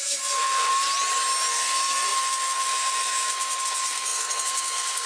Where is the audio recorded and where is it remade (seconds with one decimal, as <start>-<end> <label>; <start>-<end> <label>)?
0.0-0.7 remade; 0.7-1.5 recorded; 1.5-5.1 remade